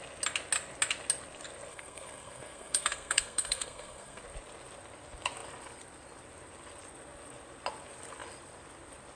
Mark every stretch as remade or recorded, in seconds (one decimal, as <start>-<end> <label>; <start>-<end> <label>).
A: 0.0-1.7 recorded; 1.7-4.2 remade; 4.2-9.2 recorded